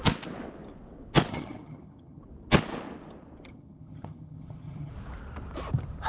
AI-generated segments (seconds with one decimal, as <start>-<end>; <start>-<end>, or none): 1.3-2.2; 3.5-4.9